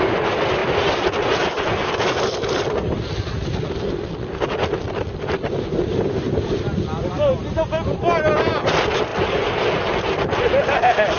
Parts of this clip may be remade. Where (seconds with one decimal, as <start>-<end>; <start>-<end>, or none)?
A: none